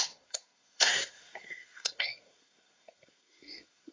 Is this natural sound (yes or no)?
no